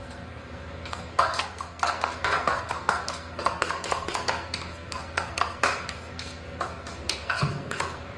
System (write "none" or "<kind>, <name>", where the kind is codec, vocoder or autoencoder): codec, SNAC